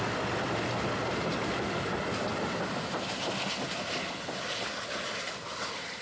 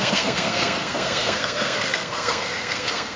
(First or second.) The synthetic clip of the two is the second